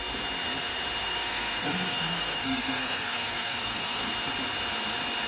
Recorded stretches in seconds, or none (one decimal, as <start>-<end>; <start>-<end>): 0.0-1.0; 4.1-5.3